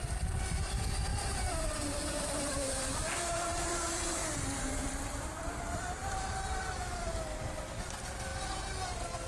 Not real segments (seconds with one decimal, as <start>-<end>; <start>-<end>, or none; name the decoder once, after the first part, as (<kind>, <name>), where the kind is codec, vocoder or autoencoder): 1.1-6.2 (vocoder, BigVGAN v2)